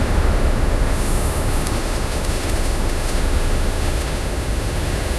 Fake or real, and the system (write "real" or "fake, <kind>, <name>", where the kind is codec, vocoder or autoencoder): fake, autoencoder, DAC-VAE